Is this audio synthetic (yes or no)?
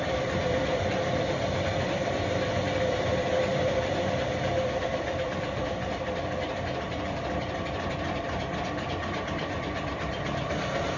yes